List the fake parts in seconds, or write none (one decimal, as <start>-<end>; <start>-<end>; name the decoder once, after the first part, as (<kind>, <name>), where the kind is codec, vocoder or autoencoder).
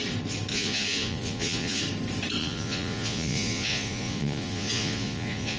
0.5-1.8 (vocoder, Vocos); 2.4-5.6